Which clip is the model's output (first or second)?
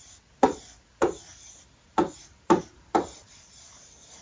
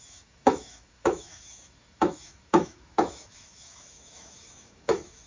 second